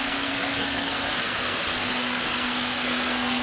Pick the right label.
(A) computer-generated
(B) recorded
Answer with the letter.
A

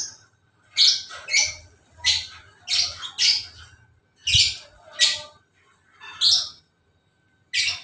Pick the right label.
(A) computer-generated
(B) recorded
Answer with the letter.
B